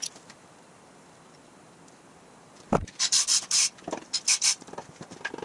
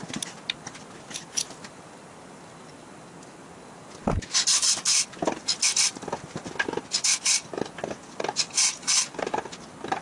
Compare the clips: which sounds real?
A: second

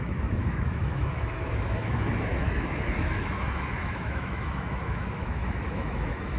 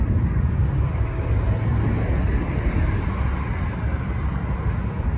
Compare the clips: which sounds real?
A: second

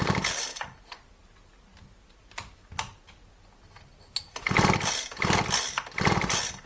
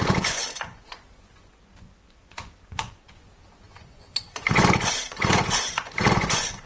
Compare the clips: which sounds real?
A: first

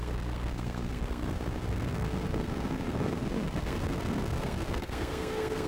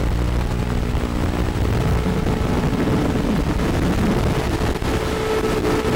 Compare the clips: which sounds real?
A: second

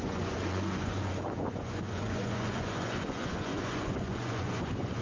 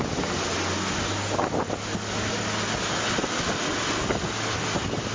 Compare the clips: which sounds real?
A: second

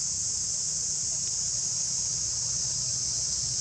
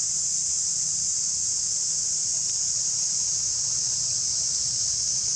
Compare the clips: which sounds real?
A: first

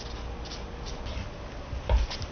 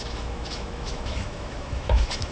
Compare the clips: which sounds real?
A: first